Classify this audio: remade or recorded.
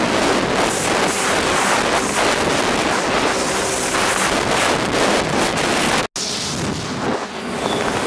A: recorded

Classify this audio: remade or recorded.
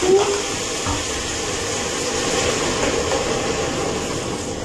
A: recorded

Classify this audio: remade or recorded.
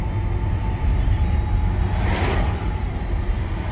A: recorded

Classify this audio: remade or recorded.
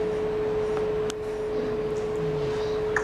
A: recorded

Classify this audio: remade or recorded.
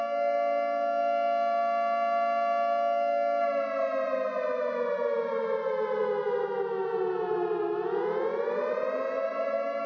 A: recorded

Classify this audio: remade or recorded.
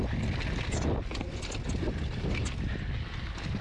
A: recorded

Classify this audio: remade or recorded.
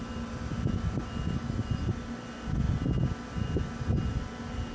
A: recorded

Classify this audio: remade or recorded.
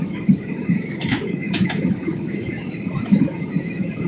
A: remade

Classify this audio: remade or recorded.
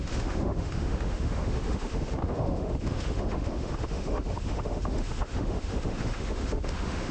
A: remade